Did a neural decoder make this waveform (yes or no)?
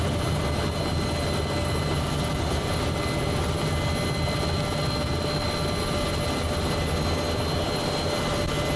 no